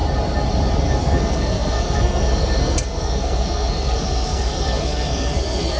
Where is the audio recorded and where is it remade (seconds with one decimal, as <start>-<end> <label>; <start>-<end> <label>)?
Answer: 0.0-1.0 recorded; 1.0-5.8 remade